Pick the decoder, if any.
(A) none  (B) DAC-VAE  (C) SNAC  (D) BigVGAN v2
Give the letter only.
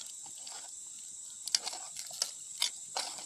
A